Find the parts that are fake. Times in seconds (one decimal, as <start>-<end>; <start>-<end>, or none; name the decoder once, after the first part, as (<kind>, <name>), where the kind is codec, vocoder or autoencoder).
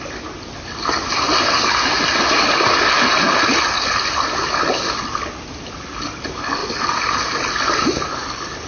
none